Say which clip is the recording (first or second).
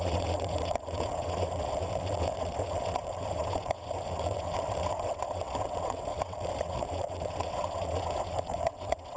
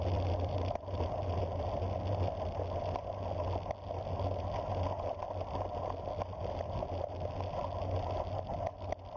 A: second